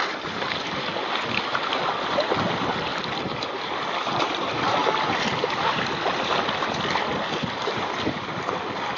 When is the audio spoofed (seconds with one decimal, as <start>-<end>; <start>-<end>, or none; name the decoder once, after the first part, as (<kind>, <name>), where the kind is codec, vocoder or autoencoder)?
none